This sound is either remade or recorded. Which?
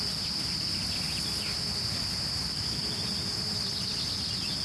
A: recorded